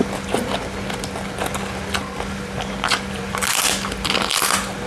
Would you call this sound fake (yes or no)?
no